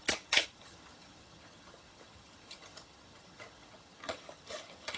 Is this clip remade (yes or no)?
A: yes